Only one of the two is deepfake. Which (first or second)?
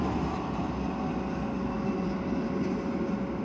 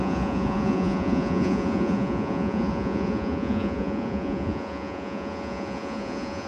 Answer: second